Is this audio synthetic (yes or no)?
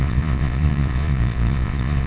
yes